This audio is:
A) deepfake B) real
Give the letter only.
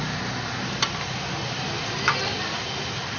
B